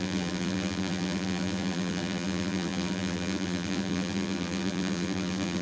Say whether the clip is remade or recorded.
remade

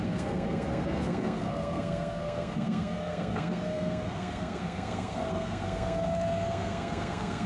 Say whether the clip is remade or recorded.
remade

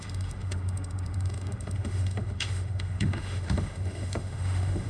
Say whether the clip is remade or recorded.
remade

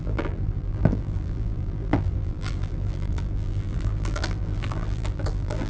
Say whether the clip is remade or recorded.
remade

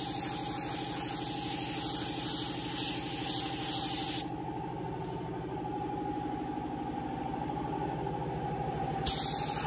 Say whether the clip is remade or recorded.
recorded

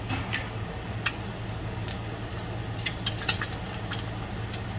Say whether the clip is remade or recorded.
recorded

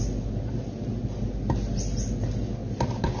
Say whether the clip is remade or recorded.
recorded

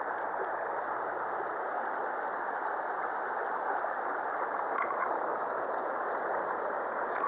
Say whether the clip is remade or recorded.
recorded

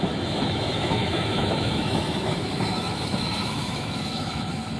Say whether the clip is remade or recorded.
remade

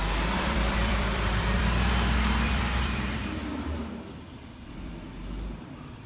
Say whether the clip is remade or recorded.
remade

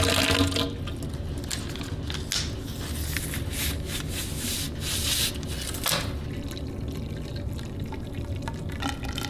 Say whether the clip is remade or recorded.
recorded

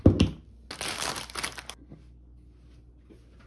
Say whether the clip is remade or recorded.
recorded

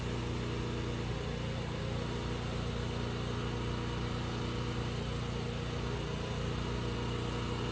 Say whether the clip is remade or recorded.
recorded